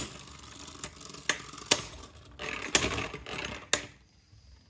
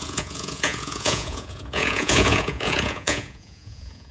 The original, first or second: first